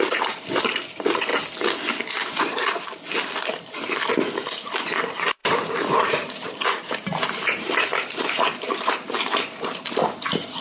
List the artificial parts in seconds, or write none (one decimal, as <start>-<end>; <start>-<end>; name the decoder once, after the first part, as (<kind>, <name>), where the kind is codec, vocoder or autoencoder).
0.0-1.3 (vocoder, BigVGAN v2); 5.0-10.6